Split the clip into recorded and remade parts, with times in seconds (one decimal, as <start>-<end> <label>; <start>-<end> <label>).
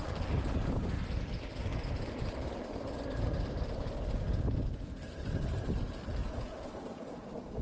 0.0-6.2 recorded; 6.2-7.6 remade